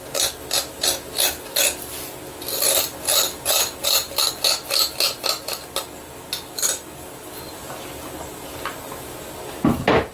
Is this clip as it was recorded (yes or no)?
yes